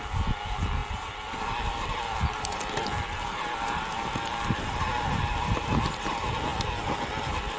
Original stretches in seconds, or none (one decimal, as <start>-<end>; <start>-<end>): 0.0-7.6